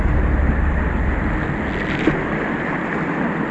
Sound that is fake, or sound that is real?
real